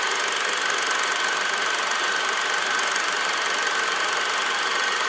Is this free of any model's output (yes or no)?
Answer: yes